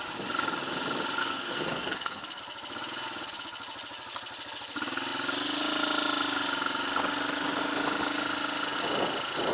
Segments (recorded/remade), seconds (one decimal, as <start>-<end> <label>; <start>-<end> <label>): 0.0-1.2 recorded; 1.2-2.4 remade; 2.4-9.5 recorded